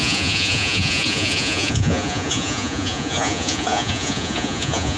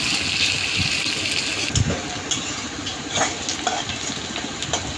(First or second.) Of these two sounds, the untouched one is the second